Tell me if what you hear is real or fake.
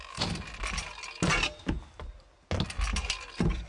real